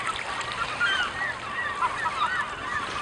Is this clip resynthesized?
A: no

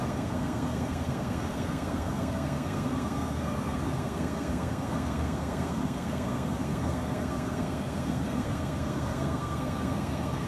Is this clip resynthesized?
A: yes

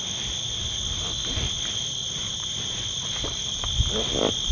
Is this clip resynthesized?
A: no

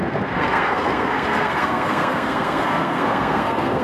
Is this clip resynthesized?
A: yes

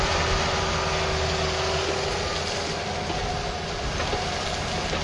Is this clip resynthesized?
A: no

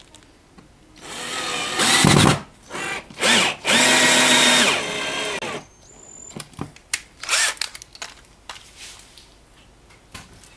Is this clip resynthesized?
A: no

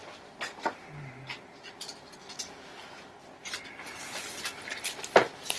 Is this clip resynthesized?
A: no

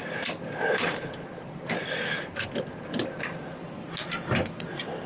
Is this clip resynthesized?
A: no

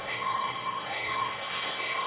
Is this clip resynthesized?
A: yes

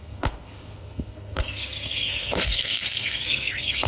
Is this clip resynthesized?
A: yes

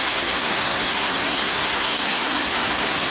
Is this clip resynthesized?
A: yes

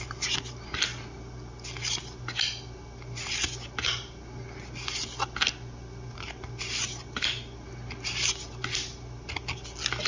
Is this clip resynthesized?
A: no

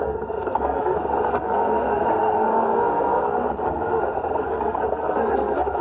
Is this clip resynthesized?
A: yes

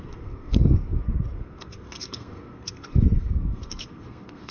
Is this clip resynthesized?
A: yes